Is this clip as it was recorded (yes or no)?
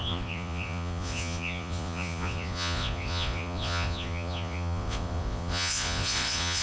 no